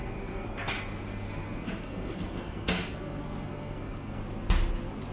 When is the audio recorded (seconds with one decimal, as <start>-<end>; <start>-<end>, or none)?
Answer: 0.7-1.1; 4.2-5.1